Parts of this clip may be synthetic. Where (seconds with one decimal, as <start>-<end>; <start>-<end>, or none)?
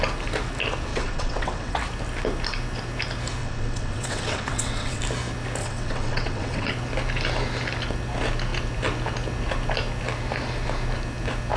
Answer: 0.9-1.8; 3.4-5.0; 5.6-6.7